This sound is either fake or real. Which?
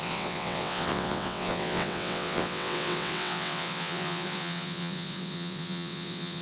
fake